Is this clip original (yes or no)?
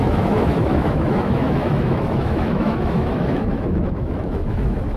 no